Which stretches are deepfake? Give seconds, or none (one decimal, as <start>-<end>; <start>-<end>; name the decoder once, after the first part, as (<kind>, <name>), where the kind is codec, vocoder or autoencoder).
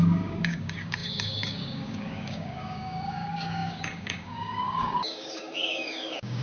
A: 0.0-6.4 (codec, DAC)